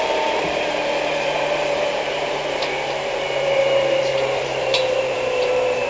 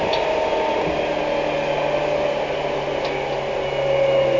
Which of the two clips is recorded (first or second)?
second